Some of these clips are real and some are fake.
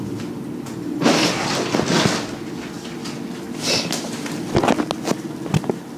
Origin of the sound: real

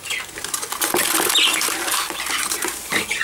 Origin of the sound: real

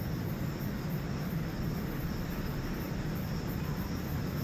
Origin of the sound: fake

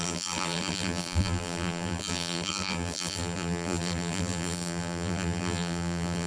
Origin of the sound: fake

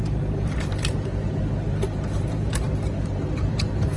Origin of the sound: fake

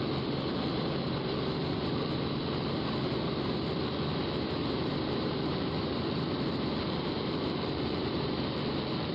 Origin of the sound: fake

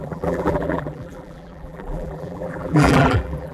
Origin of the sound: fake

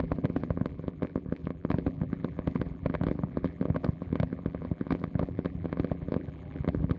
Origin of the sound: fake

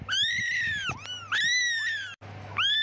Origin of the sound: fake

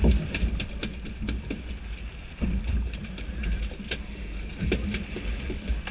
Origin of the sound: real